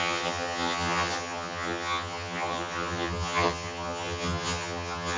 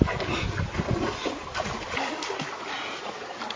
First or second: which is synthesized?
first